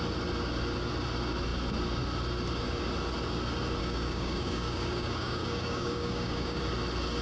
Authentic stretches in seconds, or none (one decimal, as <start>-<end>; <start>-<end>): 0.0-3.8; 6.6-7.2